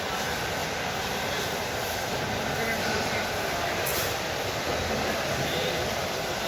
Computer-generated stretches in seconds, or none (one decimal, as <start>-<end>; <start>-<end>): 0.6-1.6; 3.9-4.6